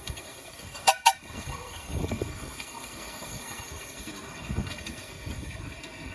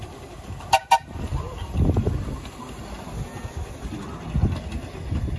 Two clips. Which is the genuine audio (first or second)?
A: second